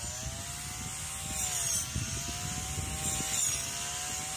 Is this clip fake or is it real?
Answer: real